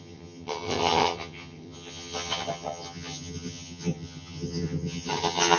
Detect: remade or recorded remade